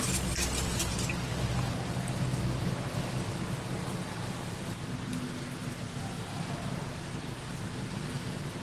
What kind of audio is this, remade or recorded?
recorded